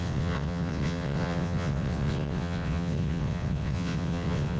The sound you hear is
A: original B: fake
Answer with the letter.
B